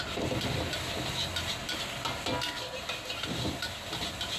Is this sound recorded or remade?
recorded